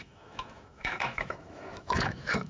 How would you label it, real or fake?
fake